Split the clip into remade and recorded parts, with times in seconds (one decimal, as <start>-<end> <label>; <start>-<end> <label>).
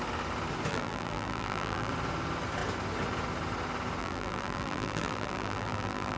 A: 0.0-0.7 recorded; 0.7-1.9 remade; 1.9-4.0 recorded; 4.0-6.2 remade